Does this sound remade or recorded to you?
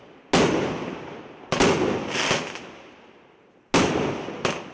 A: recorded